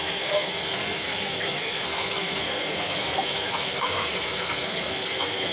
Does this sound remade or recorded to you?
remade